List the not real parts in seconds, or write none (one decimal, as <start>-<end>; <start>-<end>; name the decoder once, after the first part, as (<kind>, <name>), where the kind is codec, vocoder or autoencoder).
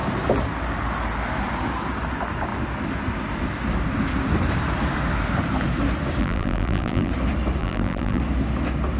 6.2-7.1 (vocoder, BigVGAN v2); 7.6-8.2